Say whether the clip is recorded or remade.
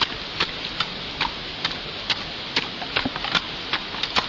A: recorded